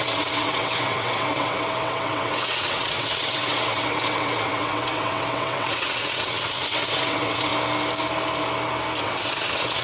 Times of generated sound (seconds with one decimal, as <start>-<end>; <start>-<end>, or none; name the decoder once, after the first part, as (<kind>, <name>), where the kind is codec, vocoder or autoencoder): 0.0-7.5 (vocoder, WaveNeXt); 9.0-9.8